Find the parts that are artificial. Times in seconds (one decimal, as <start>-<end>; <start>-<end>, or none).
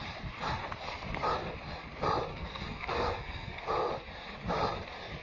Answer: 2.3-3.6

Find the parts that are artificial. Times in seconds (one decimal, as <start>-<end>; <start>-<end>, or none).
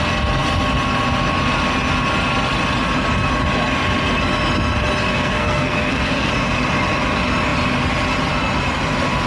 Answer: 5.1-6.3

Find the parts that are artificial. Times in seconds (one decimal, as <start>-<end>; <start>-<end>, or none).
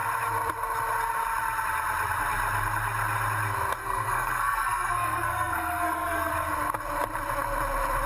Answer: 3.8-6.3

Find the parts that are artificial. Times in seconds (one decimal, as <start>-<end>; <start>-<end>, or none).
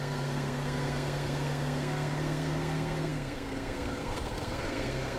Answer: 0.0-5.2